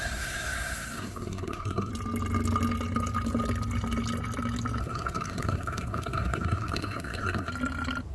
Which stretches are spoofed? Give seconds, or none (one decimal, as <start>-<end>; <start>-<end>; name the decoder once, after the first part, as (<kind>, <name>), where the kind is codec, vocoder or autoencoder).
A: 0.0-1.9 (codec, SNAC); 4.8-7.5